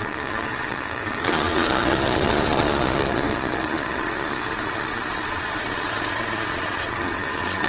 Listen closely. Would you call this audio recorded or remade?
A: remade